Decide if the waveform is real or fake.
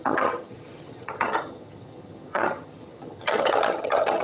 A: fake